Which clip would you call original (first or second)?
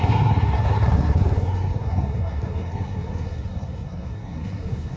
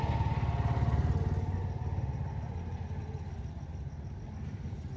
second